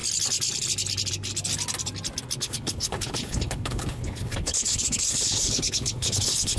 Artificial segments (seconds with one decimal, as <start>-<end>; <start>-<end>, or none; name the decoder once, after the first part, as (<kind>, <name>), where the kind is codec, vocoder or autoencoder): 2.4-6.6 (codec, HILCodec)